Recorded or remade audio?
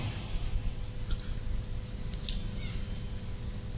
recorded